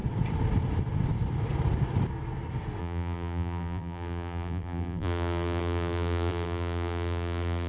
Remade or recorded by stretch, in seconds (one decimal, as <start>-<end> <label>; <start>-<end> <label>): 0.0-2.8 recorded; 2.8-7.7 remade